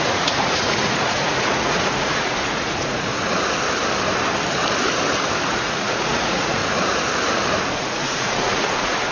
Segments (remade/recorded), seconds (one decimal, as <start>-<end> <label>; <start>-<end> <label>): 0.0-3.1 remade; 3.1-5.5 recorded; 5.5-6.6 remade; 6.6-7.8 recorded; 7.8-9.1 remade